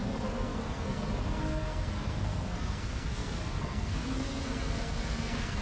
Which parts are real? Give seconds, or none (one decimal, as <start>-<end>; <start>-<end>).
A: none